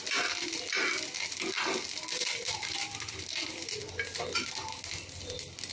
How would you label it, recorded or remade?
recorded